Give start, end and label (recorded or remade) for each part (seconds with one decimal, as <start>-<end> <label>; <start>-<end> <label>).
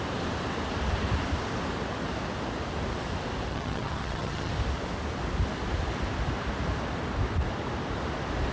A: 0.0-3.5 recorded; 3.5-4.5 remade; 4.5-8.5 recorded